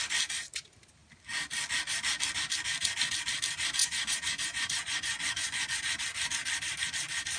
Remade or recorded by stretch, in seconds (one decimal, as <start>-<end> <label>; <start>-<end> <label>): 0.0-3.8 recorded; 3.8-5.8 remade; 5.8-7.4 recorded

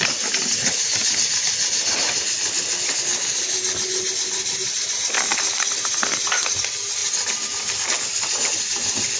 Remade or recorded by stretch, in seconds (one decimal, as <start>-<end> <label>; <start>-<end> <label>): 0.0-9.2 recorded

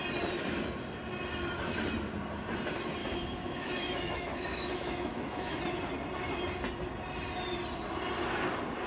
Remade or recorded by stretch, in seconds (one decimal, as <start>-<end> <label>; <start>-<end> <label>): 0.0-3.0 recorded; 3.0-5.6 remade; 5.6-8.9 recorded